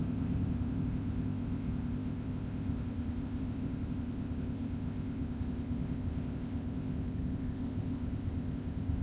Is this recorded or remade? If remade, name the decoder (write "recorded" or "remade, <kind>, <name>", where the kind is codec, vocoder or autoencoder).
remade, codec, ZipCodec